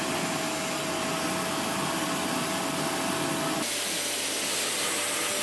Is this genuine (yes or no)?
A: yes